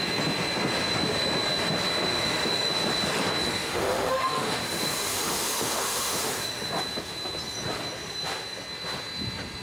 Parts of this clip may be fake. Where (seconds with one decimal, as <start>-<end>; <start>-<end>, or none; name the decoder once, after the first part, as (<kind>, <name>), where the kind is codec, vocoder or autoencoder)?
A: 2.1-2.7 (autoencoder, DAC-VAE); 3.5-6.7